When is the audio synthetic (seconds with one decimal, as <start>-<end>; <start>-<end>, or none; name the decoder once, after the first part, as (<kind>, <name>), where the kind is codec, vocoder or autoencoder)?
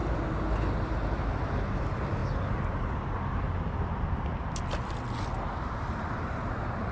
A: none